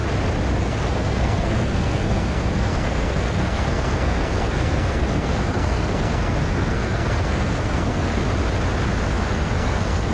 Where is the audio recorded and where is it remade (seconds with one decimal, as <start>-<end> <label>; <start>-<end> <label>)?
0.0-0.6 recorded; 0.6-8.2 remade; 8.2-9.1 recorded; 9.1-10.1 remade